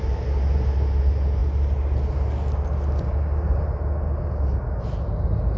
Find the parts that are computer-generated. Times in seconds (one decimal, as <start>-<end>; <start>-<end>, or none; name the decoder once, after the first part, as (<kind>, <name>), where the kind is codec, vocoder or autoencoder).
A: none